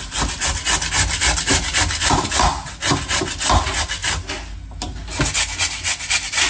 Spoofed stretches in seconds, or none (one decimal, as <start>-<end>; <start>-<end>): none

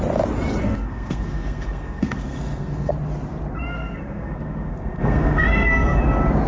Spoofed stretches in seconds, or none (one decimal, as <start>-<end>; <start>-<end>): 0.6-2.9; 3.7-6.0

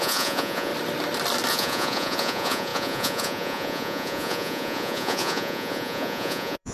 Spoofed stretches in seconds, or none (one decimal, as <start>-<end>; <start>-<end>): 0.0-0.7; 1.5-6.7

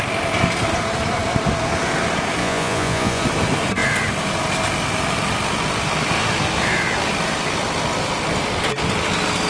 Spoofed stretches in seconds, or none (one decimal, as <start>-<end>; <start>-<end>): 2.4-3.2